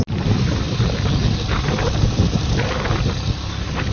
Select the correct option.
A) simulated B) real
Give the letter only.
B